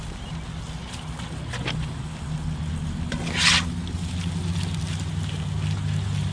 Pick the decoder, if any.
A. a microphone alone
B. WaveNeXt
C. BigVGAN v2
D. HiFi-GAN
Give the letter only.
A